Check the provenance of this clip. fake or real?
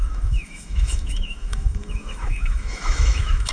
fake